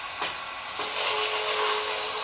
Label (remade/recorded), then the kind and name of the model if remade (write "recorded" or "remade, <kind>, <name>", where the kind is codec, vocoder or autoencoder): recorded